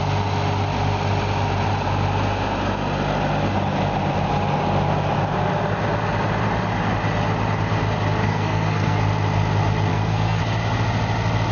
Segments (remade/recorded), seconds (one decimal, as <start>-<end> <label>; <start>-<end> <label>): 0.0-8.2 recorded; 8.2-9.0 remade; 9.0-9.9 recorded; 9.9-10.4 remade; 10.4-11.5 recorded